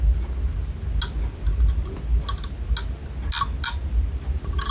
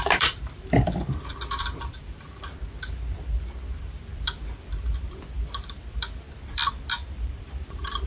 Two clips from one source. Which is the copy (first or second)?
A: second